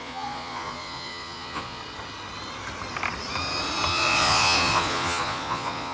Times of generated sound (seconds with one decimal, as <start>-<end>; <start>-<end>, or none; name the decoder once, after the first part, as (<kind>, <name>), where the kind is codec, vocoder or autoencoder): 0.0-1.8 (vocoder, Vocos); 3.9-5.9

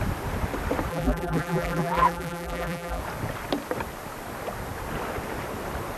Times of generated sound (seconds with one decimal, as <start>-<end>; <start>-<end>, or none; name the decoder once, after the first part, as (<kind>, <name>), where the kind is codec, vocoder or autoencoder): 0.9-3.0 (vocoder, BigVGAN v2)

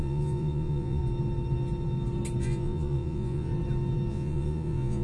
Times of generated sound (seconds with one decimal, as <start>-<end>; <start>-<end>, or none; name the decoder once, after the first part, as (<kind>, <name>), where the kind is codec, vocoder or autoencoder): 0.0-1.0 (vocoder, Vocos); 2.4-3.5; 4.1-5.0

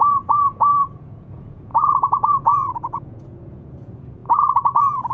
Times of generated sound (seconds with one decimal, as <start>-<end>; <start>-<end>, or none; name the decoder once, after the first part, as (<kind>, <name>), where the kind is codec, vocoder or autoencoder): 0.0-5.1 (vocoder, Vocos)

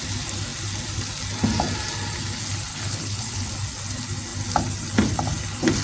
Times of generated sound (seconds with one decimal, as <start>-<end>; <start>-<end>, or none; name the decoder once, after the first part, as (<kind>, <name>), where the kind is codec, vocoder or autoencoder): 2.7-3.5 (codec, HILCodec)

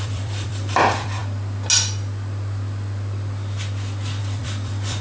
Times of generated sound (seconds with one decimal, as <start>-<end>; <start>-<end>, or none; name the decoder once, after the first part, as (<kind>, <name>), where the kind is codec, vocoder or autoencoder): 0.0-1.2 (vocoder, BigVGAN v2); 4.2-5.0